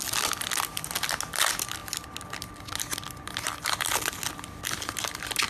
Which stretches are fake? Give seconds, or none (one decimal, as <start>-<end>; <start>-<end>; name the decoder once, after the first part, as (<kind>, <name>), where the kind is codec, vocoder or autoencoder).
none